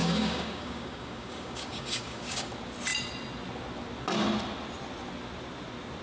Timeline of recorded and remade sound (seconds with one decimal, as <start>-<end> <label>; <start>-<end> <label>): 0.0-2.5 remade; 2.5-6.0 recorded